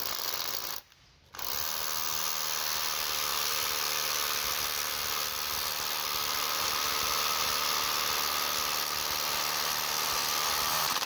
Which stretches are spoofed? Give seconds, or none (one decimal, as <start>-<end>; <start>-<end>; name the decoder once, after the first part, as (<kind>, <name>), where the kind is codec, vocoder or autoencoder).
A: 3.3-7.4 (vocoder, BigVGAN v2); 10.2-11.1